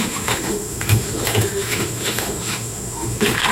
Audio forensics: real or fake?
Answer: fake